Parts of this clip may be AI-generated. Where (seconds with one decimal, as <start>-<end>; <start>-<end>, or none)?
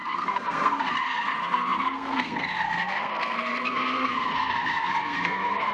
0.0-5.7